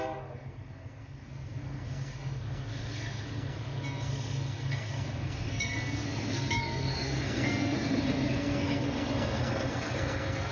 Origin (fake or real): fake